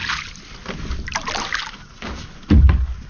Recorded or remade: recorded